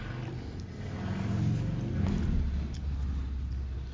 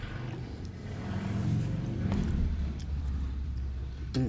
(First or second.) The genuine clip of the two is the first